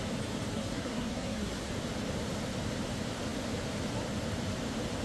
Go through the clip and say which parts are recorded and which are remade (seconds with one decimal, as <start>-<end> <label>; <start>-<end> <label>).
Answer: 0.0-0.5 recorded; 0.5-1.7 remade; 1.7-5.0 recorded